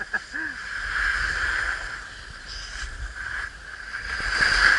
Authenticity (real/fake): real